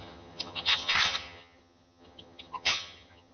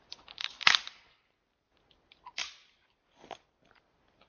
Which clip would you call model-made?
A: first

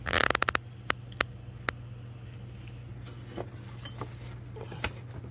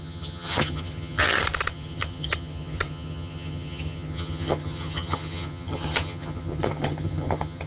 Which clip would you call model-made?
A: second